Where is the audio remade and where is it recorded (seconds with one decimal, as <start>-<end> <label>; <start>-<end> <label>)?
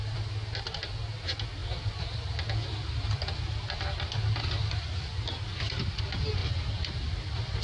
0.0-6.4 recorded; 6.4-7.6 remade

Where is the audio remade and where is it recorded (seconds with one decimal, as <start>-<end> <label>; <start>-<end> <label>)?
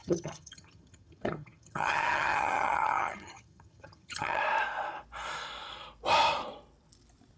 0.0-4.4 remade; 4.4-7.4 recorded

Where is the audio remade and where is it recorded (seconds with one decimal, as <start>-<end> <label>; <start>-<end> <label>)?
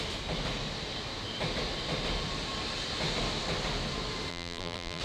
0.0-4.3 recorded; 4.3-5.0 remade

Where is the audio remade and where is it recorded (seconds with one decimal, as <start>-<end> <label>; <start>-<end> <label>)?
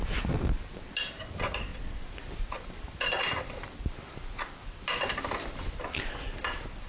0.0-1.7 recorded; 1.7-5.8 remade; 5.8-6.9 recorded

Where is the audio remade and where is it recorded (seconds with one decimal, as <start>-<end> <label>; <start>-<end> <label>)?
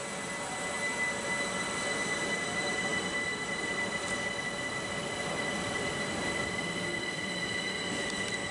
0.0-2.3 recorded; 2.3-8.5 remade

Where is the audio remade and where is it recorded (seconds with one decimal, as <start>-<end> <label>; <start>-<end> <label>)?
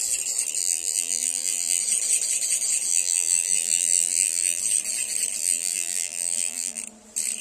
0.0-0.6 recorded; 0.6-1.8 remade; 1.8-2.9 recorded; 2.9-4.6 remade; 4.6-5.4 recorded; 5.4-6.8 remade; 6.8-7.4 recorded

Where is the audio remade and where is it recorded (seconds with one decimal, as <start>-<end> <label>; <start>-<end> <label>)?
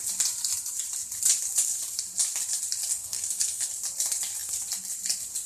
0.0-2.9 recorded; 2.9-3.7 remade; 3.7-5.5 recorded